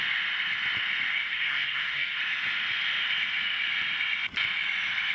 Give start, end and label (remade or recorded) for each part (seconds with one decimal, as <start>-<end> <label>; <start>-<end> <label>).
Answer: 0.0-1.1 recorded; 1.1-2.2 remade; 2.2-5.1 recorded